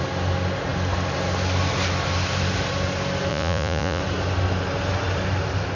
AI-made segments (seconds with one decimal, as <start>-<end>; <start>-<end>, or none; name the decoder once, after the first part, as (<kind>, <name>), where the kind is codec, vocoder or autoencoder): 3.3-4.0 (vocoder, Vocos)